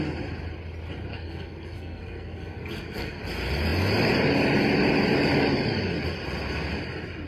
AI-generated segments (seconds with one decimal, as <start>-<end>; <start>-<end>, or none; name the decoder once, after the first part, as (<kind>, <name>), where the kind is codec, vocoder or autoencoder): 1.1-3.2 (codec, SNAC)